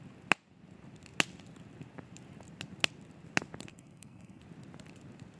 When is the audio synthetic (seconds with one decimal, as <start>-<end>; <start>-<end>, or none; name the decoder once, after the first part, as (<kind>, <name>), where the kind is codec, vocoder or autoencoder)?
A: 3.7-4.4 (codec, SNAC)